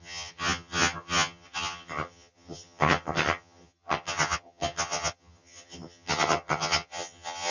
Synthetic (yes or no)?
yes